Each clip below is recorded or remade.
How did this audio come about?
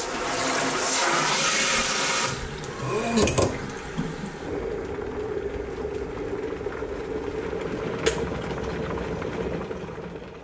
recorded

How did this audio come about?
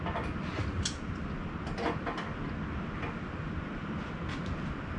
recorded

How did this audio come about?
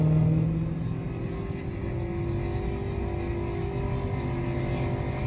recorded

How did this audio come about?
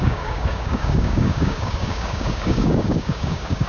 remade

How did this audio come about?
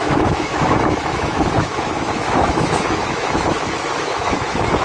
remade